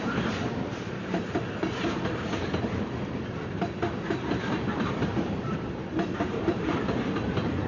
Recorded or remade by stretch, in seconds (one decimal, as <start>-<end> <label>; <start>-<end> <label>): 0.0-5.0 recorded; 5.0-6.7 remade; 6.7-7.7 recorded